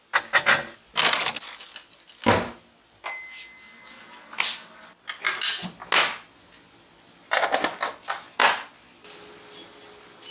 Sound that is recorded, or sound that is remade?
recorded